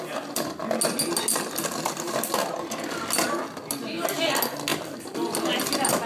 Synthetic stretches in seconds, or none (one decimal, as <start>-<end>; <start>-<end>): 4.7-5.4